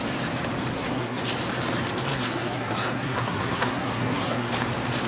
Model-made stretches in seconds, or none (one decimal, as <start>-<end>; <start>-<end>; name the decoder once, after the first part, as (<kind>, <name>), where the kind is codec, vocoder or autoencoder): 0.7-1.2 (codec, SNAC); 2.1-4.5